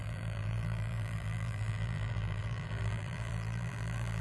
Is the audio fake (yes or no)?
yes